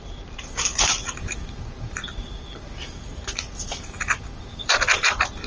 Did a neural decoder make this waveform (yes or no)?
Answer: yes